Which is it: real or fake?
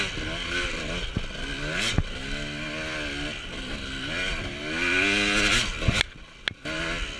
real